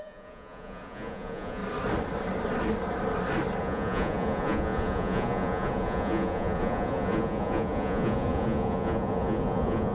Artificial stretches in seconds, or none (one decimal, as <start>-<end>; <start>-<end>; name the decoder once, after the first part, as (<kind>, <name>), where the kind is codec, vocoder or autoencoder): 0.0-1.6 (vocoder, Vocos); 3.6-9.9